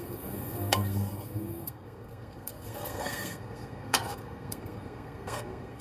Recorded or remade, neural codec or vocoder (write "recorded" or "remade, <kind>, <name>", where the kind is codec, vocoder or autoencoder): remade, codec, SNAC